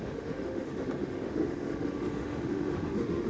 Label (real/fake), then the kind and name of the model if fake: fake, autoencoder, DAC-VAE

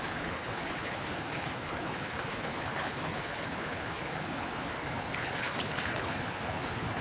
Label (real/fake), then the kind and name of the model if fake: fake, codec, HILCodec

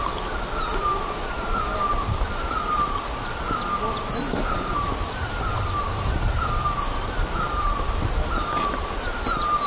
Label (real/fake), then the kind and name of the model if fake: real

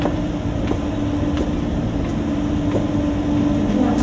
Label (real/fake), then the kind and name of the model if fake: real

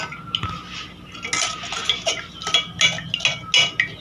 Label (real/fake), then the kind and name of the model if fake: real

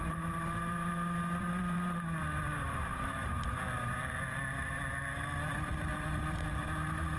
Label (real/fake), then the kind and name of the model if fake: fake, vocoder, BigVGAN v2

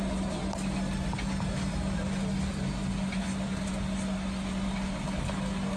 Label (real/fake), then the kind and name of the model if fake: real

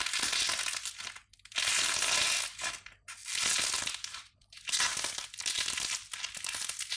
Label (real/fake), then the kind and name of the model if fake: real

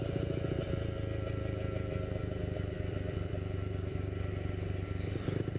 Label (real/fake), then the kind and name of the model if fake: real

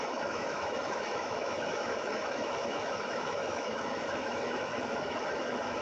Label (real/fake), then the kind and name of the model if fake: fake, autoencoder, DAC-VAE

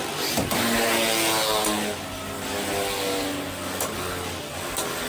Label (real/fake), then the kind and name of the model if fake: real